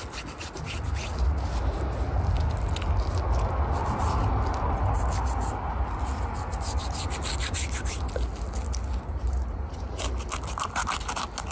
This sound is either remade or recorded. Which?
recorded